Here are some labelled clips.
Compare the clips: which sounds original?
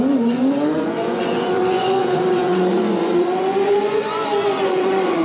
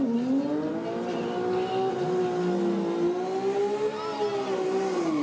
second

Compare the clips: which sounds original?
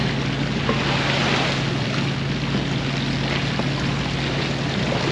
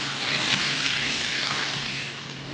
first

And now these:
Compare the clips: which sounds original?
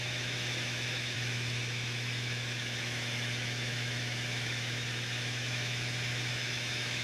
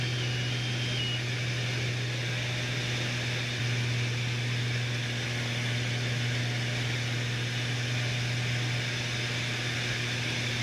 second